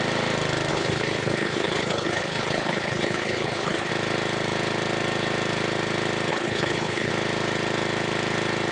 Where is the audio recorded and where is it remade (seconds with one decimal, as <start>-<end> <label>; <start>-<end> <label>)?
0.0-0.7 recorded; 0.7-3.9 remade; 3.9-6.3 recorded; 6.3-7.1 remade; 7.1-8.7 recorded